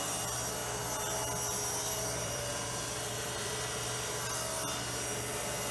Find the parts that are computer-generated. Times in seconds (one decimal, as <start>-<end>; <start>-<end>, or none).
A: 0.0-0.6; 1.8-5.7